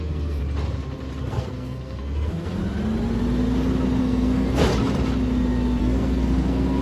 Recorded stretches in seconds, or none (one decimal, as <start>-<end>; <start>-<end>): 0.4-1.2; 2.6-4.0; 4.7-5.8